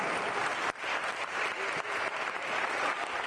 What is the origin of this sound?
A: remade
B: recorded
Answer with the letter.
B